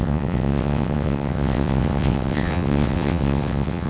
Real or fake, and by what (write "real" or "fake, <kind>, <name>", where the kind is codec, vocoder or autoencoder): fake, vocoder, WaveNeXt